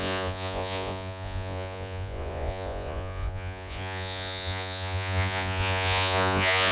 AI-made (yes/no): yes